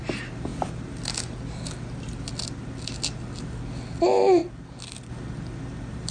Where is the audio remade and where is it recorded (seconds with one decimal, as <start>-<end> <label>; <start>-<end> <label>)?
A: 0.0-6.1 recorded